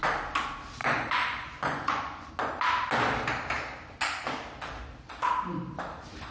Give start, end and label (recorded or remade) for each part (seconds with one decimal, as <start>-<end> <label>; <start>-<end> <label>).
0.0-0.8 recorded; 0.8-2.3 remade; 2.3-6.3 recorded